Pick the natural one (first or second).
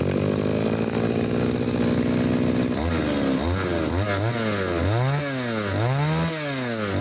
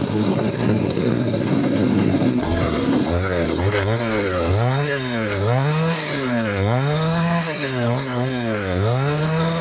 first